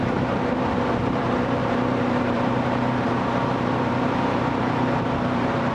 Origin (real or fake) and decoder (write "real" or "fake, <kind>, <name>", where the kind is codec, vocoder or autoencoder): fake, vocoder, BigVGAN v2